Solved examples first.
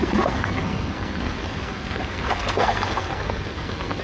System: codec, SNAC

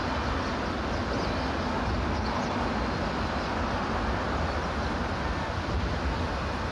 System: none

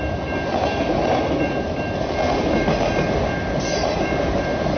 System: none